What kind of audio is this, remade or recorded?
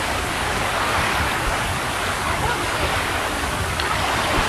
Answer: remade